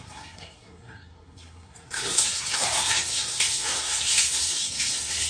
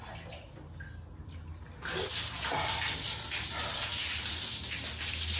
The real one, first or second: second